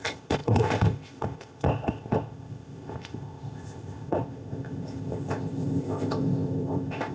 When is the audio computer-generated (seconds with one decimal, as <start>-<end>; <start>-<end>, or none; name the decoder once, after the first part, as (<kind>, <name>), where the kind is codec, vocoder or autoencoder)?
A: 0.0-7.1 (codec, ZipCodec)